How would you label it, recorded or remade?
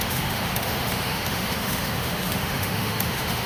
remade